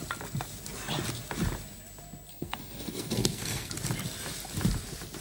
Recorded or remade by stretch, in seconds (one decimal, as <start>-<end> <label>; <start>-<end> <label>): 0.0-2.3 recorded; 2.3-3.7 remade; 3.7-5.2 recorded